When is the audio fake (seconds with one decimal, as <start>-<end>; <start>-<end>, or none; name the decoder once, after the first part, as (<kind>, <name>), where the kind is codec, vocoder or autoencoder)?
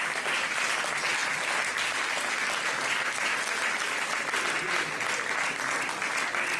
none